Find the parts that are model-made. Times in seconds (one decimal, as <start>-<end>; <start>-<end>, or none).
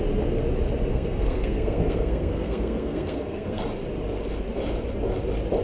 0.9-3.6